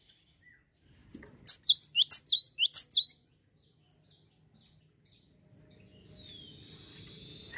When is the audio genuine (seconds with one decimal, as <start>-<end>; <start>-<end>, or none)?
0.0-7.6